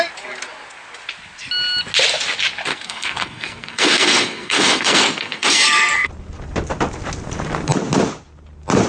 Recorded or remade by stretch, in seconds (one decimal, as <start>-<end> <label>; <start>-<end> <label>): 0.0-2.7 recorded; 2.7-6.1 remade; 6.1-8.9 recorded